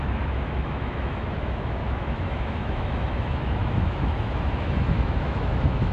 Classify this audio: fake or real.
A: fake